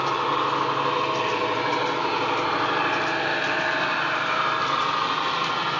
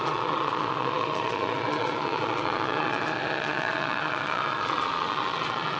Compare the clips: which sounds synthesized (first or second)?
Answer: second